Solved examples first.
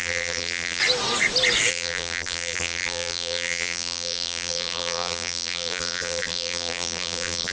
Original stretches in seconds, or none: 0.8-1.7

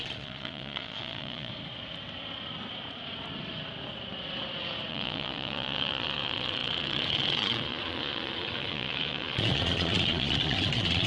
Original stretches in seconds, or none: 1.5-4.9

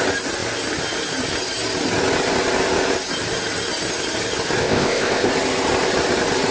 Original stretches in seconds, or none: 0.0-4.6; 5.3-6.5

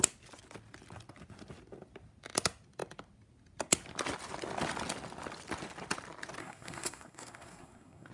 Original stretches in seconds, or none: 0.0-6.4

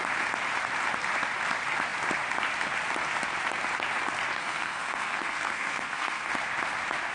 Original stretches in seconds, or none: 0.0-4.4; 6.3-7.1

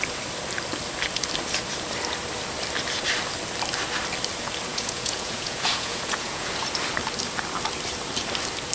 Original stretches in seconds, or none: 0.0-4.7; 6.5-8.7

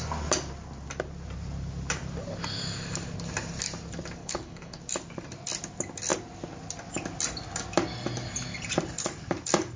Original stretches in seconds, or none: 0.0-4.2; 4.8-9.8

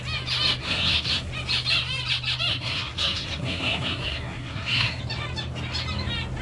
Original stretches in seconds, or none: 0.0-0.6; 1.3-2.5; 5.0-6.4